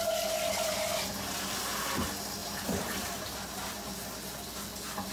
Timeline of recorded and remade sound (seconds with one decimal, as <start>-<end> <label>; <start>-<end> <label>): 0.0-2.4 recorded; 2.4-3.7 remade; 3.7-5.1 recorded